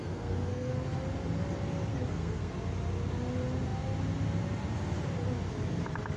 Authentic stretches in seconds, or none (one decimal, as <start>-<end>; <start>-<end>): 0.7-1.9; 2.5-6.2